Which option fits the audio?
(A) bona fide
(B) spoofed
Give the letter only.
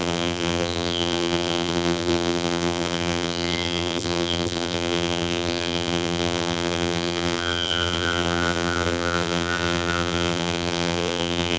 B